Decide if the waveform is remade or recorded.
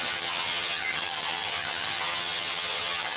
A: remade